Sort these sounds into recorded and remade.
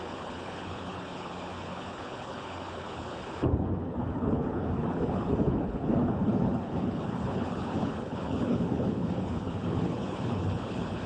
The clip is remade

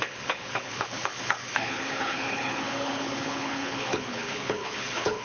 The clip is remade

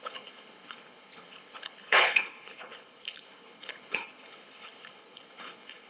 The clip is remade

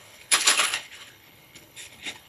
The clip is remade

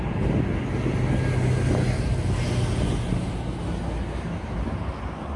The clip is recorded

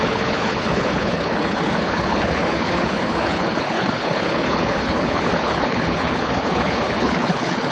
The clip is remade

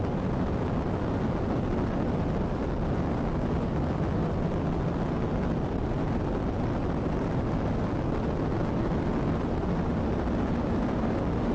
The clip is recorded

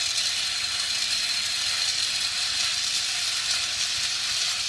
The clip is recorded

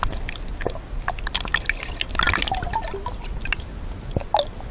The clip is recorded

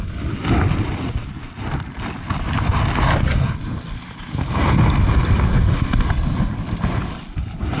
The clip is recorded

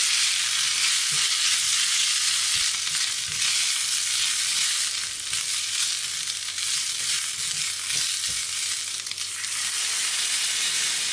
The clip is recorded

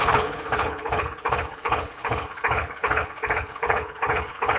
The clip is remade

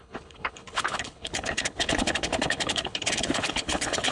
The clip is remade